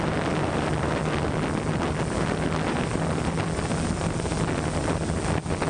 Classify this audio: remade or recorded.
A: recorded